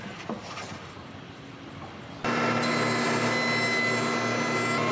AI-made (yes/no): no